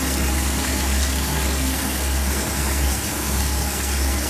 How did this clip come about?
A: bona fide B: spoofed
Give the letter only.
B